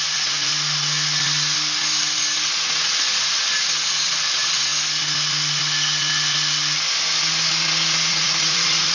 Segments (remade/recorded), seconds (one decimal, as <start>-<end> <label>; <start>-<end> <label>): 0.0-0.5 remade; 0.5-2.5 recorded; 2.5-4.7 remade; 4.7-8.1 recorded; 8.1-8.9 remade